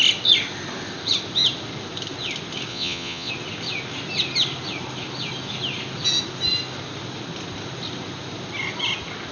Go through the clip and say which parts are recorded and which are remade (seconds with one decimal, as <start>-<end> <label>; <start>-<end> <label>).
0.0-2.7 recorded; 2.7-3.3 remade; 3.3-9.3 recorded